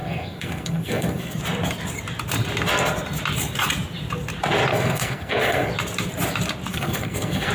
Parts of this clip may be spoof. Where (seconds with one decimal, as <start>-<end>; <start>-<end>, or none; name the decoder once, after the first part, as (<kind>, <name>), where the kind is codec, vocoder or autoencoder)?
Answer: 0.0-1.4 (codec, SNAC); 4.7-5.7; 6.7-7.5